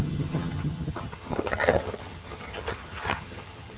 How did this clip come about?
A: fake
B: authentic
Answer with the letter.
A